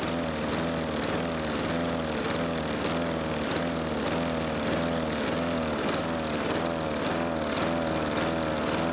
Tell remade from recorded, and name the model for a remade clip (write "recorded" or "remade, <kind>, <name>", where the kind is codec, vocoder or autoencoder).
recorded